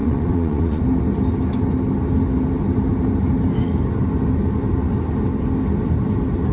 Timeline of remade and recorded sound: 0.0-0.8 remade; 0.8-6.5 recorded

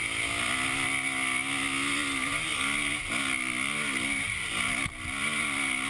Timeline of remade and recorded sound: 0.0-5.9 recorded

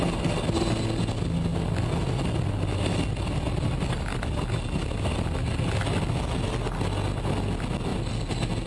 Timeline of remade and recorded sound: 0.0-8.7 recorded

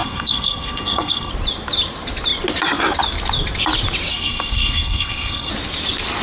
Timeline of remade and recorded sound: 0.0-1.3 remade; 1.3-4.1 recorded; 4.1-5.5 remade; 5.5-6.2 recorded

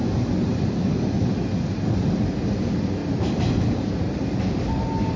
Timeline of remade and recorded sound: 0.0-3.0 recorded; 3.0-3.9 remade; 3.9-5.2 recorded